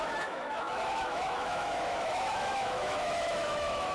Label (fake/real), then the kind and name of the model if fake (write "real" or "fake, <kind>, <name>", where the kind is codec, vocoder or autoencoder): fake, autoencoder, DAC-VAE